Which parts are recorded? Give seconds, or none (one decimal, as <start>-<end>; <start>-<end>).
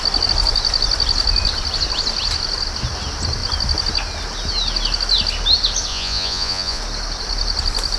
0.0-5.9; 6.8-8.0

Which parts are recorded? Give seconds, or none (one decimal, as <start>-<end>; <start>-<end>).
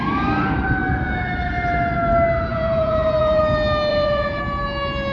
0.0-2.5; 3.4-3.9; 4.4-5.1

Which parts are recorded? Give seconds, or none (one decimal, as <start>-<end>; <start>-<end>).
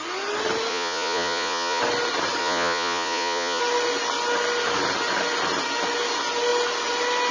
0.0-0.7; 1.8-2.4; 3.6-7.3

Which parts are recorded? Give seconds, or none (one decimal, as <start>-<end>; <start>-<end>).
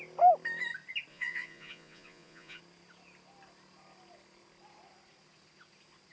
0.0-1.1; 2.6-6.1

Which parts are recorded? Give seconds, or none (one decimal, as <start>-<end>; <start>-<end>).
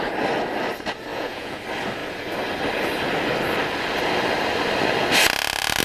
0.0-1.1; 1.6-5.8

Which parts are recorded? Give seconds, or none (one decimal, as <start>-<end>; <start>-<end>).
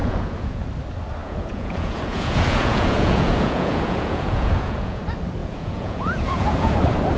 0.7-1.2; 5.0-5.4; 6.8-7.2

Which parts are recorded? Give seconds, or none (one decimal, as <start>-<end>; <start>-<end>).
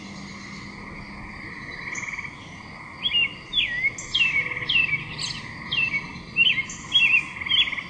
0.0-7.9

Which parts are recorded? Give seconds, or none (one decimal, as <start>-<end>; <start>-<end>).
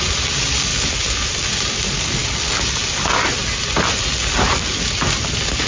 0.0-5.7